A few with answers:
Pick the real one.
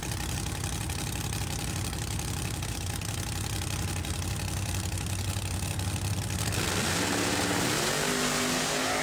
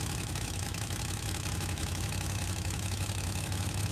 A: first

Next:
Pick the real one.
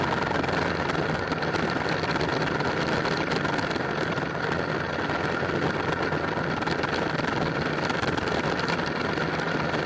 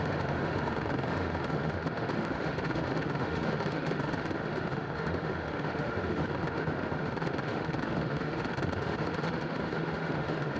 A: first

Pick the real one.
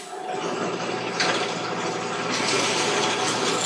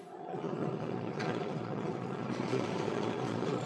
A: first